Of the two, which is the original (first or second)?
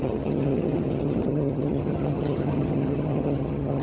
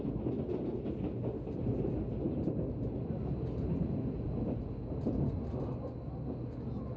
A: second